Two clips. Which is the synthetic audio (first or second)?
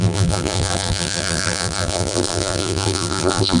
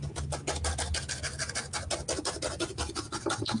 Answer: first